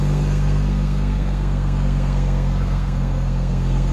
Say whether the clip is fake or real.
fake